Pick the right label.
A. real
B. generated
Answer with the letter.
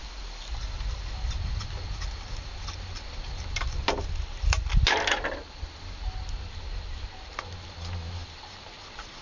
A